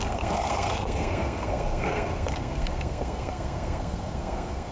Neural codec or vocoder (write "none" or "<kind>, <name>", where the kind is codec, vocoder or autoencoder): codec, SNAC